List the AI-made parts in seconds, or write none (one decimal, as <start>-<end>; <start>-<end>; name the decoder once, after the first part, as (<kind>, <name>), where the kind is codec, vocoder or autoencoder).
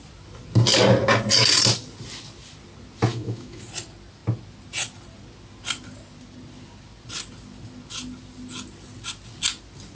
3.1-3.6 (autoencoder, DAC-VAE)